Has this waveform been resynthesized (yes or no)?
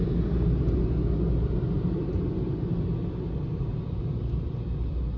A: no